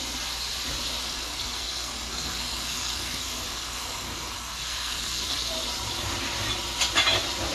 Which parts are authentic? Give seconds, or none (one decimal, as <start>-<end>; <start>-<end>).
0.0-1.0; 5.5-7.5